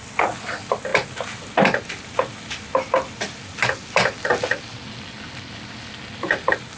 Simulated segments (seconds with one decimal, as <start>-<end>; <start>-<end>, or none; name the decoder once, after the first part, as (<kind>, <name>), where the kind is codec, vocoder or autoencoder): none